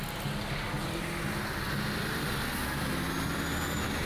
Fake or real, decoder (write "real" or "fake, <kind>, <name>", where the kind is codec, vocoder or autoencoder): real